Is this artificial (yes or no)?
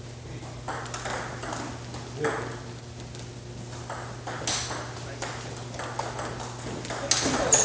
no